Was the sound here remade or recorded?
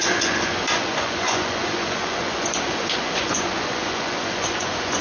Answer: remade